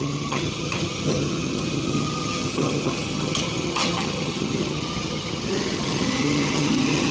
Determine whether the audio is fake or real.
fake